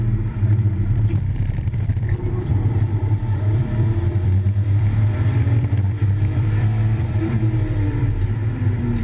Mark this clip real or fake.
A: fake